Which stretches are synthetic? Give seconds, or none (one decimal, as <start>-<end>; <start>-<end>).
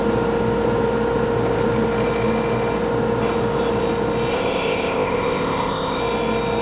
4.3-6.0